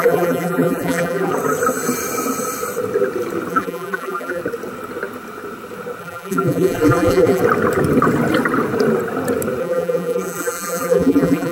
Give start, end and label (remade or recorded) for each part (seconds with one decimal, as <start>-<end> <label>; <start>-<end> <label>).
0.0-1.3 remade; 1.3-3.5 recorded; 3.5-4.4 remade; 4.4-6.0 recorded; 6.0-7.4 remade; 7.4-9.6 recorded; 9.6-11.5 remade